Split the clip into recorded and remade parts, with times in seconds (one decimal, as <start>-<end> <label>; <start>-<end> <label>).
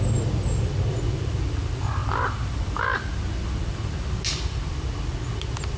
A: 0.0-5.8 recorded